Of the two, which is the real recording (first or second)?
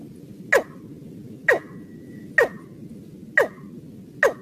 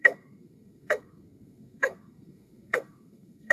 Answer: first